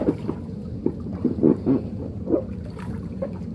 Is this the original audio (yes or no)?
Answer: no